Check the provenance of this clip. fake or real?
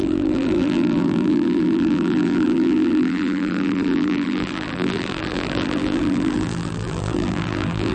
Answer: fake